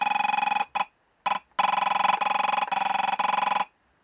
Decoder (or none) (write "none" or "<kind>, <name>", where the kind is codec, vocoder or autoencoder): none